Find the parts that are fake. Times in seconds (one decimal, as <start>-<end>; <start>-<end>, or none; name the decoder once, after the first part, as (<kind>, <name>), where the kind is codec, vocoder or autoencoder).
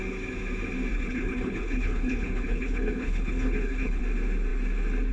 0.9-4.0 (codec, HILCodec)